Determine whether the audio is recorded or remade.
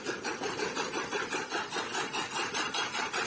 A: recorded